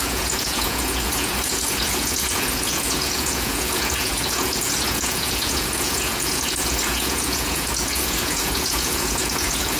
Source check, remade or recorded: remade